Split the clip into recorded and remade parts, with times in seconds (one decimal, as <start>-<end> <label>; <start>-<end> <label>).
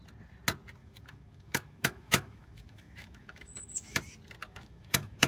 0.0-0.8 recorded; 0.8-4.0 remade; 4.0-4.4 recorded; 4.4-5.3 remade